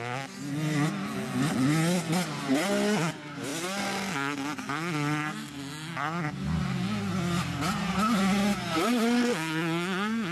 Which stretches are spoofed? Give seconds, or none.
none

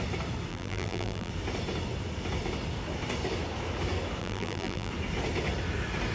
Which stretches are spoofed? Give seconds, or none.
0.5-1.3 (vocoder, BigVGAN v2); 4.2-4.9

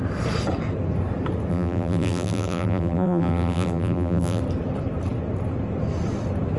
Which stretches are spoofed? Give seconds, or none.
1.5-4.4 (vocoder, BigVGAN v2)

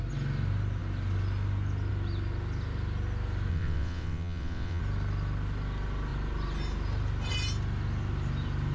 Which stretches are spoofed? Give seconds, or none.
3.5-4.8 (vocoder, WaveNeXt)

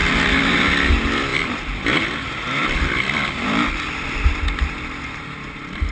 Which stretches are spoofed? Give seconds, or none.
1.3-2.0 (vocoder, BigVGAN v2); 2.6-4.7

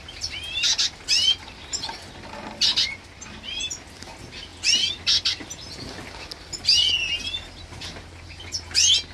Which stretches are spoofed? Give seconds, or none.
none

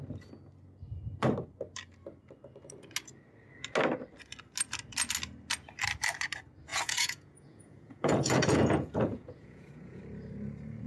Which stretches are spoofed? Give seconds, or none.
6.7-10.0 (vocoder, Vocos)

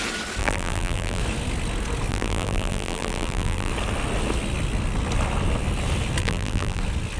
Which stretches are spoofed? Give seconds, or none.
0.4-1.2 (vocoder, BigVGAN v2); 2.1-3.7; 6.2-6.8